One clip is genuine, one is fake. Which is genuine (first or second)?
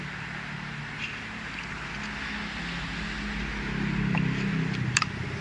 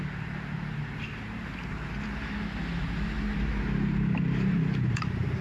first